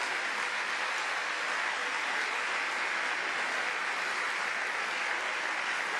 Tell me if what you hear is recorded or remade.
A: recorded